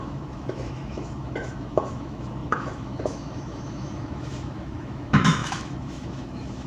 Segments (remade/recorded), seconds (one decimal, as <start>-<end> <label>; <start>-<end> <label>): 0.0-6.7 remade